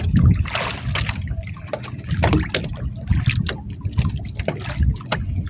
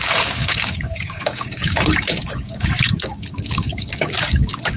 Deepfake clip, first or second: second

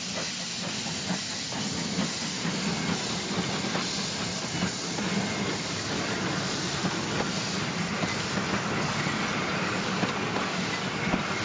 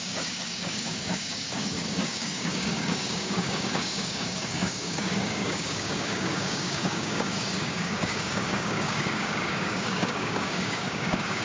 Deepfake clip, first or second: second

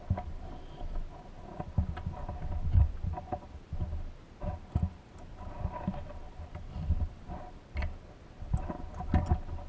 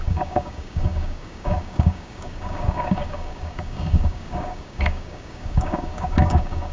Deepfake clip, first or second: second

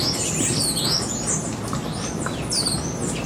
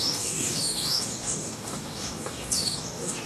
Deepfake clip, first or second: second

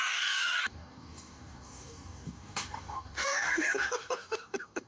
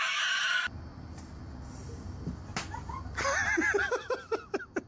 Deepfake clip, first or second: first